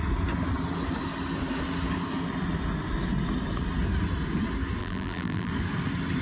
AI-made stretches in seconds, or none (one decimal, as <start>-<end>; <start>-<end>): 4.8-5.5